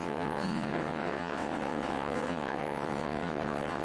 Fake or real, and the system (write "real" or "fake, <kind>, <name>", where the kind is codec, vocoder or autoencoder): fake, vocoder, WaveNeXt